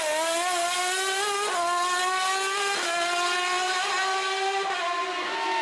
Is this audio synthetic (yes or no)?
no